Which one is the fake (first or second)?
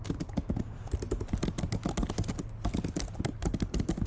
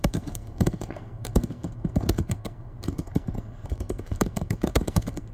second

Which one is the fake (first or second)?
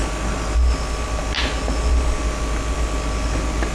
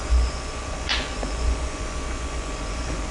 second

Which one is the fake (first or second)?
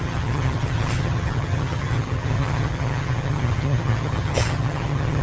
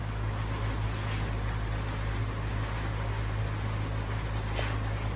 first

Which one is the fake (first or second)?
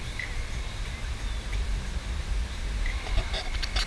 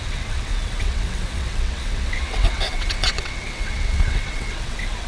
second